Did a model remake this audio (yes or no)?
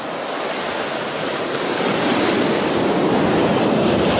no